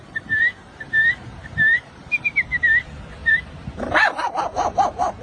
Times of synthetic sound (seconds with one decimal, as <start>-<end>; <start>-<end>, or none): 0.0-5.2